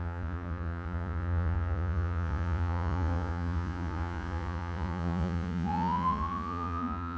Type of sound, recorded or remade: remade